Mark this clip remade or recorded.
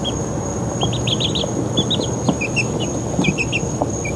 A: recorded